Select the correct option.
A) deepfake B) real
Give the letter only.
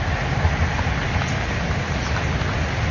B